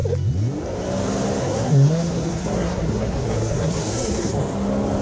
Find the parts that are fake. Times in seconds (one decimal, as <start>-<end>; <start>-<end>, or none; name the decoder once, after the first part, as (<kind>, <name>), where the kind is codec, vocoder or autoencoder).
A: 1.4-4.4 (codec, SNAC)